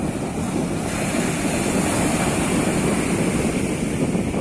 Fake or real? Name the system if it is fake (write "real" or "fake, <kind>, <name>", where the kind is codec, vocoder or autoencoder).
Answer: real